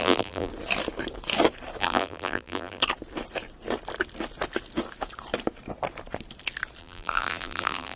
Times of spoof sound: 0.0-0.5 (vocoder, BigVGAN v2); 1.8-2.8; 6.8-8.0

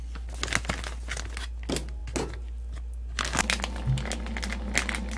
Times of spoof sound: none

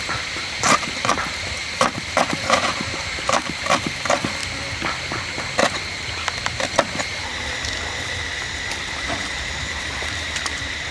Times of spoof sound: 0.0-4.4 (vocoder, BigVGAN v2); 8.7-10.9

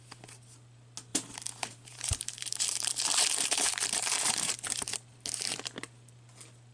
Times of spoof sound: 1.1-4.9 (vocoder, BigVGAN v2)

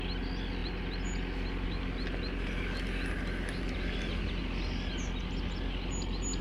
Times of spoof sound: none

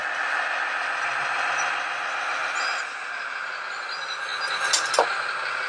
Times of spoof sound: 2.3-4.3 (vocoder, BigVGAN v2); 5.3-5.7

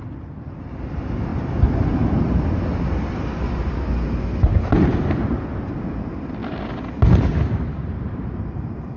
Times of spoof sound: none

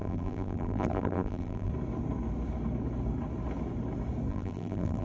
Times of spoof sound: 0.0-1.7 (vocoder, BigVGAN v2); 4.3-5.0